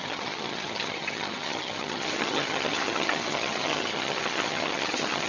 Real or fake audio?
fake